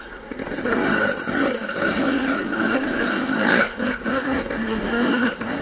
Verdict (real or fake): fake